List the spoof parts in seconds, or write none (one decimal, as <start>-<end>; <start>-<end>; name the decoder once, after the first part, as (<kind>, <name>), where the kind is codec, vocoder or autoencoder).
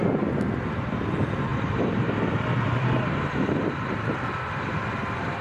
1.5-3.2 (vocoder, BigVGAN v2)